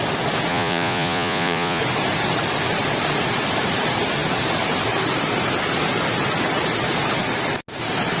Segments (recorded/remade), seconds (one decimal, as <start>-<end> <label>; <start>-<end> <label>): 0.0-0.5 recorded; 0.5-1.8 remade; 1.8-8.2 recorded